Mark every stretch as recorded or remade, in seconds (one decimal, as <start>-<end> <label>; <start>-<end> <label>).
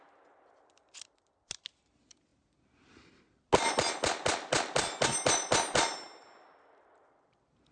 0.0-7.7 recorded